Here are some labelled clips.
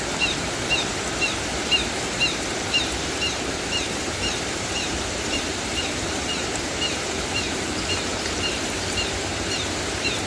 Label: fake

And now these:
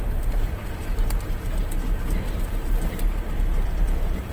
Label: fake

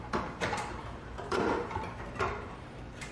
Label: fake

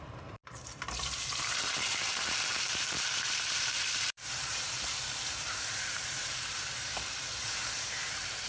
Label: fake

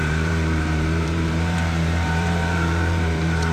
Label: fake